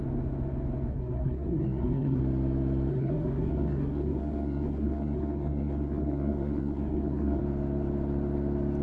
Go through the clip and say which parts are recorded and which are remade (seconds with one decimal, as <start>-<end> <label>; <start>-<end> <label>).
0.0-0.9 recorded; 0.9-2.2 remade; 2.2-2.9 recorded; 2.9-7.4 remade; 7.4-8.8 recorded